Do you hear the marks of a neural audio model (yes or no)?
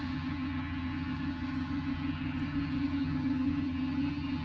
yes